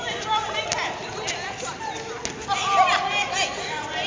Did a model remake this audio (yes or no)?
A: no